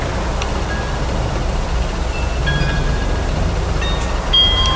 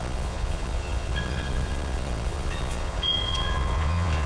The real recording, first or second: first